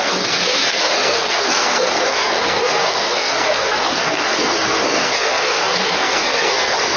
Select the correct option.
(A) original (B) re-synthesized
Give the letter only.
B